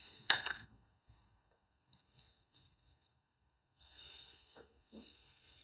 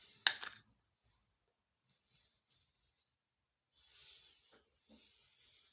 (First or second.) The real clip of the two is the second